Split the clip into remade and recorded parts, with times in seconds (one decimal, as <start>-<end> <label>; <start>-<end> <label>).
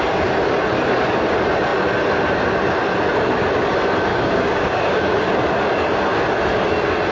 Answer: 0.0-4.1 recorded; 4.1-5.2 remade; 5.2-7.1 recorded